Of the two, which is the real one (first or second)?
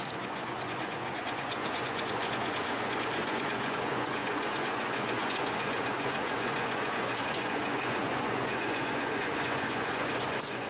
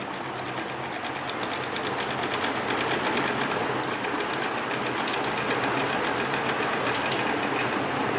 second